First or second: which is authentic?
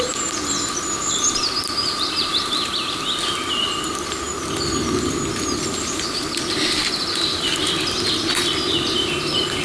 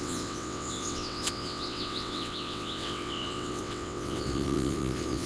first